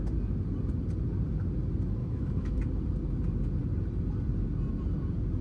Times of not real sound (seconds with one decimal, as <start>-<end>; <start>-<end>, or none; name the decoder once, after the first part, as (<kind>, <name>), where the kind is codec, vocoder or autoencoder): 2.0-2.6 (autoencoder, DAC-VAE)